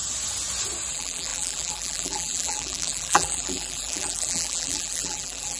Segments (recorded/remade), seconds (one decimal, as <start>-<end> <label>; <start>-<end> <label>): 0.0-0.9 recorded; 0.9-5.6 remade